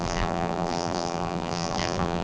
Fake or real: fake